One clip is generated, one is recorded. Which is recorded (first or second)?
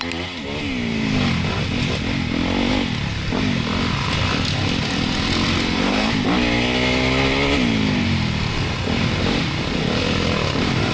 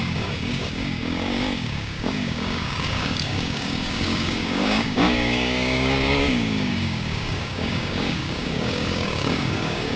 first